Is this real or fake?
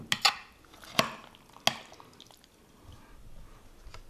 real